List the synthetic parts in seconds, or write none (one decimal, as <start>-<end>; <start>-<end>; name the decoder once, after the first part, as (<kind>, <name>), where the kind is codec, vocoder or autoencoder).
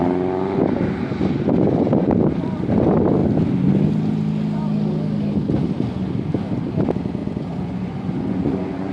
7.2-8.9 (vocoder, Vocos)